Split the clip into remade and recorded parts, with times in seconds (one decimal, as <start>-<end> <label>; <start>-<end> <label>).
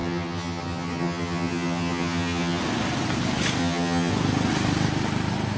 0.0-2.6 remade; 2.6-3.6 recorded; 3.6-4.1 remade; 4.1-5.6 recorded